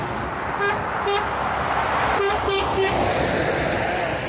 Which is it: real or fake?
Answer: real